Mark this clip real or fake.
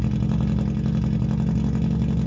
real